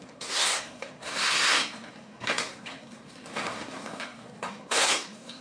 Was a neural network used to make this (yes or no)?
yes